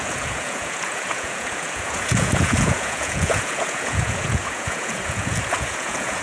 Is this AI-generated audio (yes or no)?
yes